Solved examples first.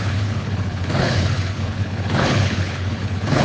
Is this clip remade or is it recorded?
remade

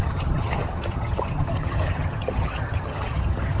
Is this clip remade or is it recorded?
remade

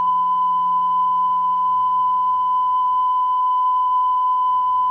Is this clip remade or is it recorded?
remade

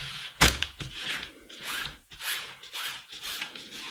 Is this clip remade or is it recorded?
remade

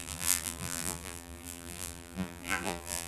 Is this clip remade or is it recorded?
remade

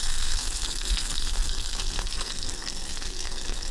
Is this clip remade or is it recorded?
remade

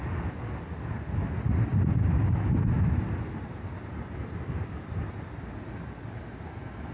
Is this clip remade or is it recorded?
recorded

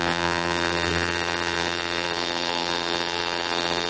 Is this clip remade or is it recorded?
remade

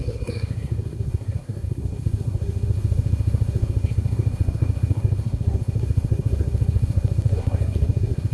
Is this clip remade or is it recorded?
remade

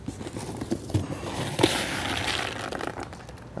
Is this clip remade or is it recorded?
recorded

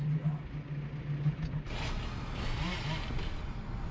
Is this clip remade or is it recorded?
recorded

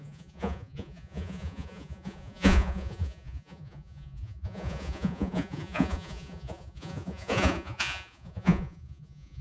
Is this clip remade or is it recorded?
remade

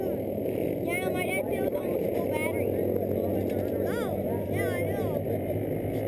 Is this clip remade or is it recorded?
recorded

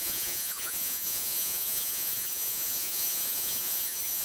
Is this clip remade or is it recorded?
remade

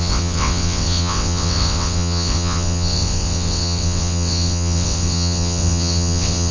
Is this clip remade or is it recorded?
remade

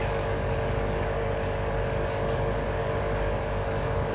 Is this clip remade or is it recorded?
remade